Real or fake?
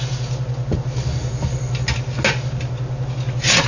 real